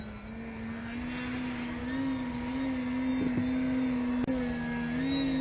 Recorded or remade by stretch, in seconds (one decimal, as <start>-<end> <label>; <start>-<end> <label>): 0.0-5.4 recorded